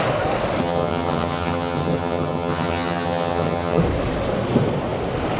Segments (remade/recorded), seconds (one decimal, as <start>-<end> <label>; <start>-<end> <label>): 0.0-0.6 recorded; 0.6-3.8 remade; 3.8-5.4 recorded